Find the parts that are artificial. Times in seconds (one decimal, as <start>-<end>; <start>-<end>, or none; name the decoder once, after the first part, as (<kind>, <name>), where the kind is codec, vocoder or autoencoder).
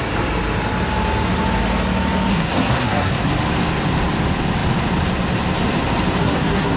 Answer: 2.3-3.3 (codec, SNAC); 6.2-6.8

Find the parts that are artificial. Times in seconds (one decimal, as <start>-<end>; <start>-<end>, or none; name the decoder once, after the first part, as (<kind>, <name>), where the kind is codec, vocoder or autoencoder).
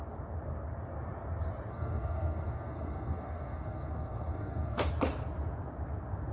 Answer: 1.7-4.9 (codec, SNAC)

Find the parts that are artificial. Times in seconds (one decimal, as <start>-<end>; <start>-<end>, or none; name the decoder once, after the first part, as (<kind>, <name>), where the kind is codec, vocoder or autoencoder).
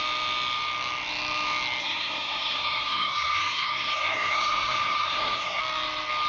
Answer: 1.8-5.6 (codec, SNAC)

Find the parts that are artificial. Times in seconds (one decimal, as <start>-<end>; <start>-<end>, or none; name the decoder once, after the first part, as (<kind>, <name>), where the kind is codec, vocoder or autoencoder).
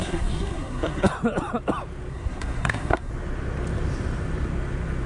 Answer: 0.0-1.1 (codec, SNAC); 2.1-3.1